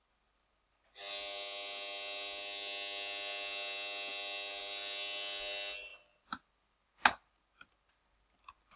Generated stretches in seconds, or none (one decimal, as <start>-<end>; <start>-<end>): none